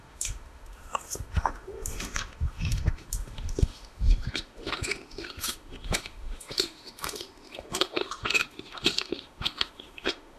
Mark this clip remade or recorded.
remade